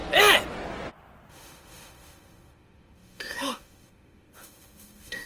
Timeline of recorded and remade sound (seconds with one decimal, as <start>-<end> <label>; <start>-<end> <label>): 0.0-1.3 recorded; 1.3-5.3 remade